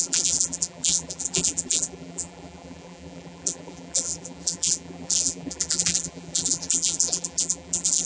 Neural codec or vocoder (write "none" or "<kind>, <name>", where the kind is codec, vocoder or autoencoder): vocoder, BigVGAN v2